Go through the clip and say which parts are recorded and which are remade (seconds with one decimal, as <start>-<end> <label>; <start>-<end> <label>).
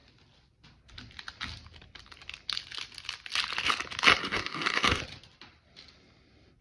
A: 0.0-4.2 recorded; 4.2-5.0 remade; 5.0-6.6 recorded